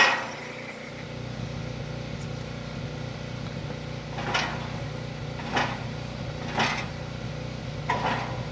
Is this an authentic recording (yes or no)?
yes